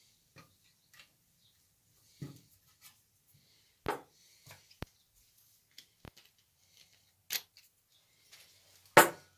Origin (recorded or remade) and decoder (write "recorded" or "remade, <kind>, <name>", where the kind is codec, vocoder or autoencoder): recorded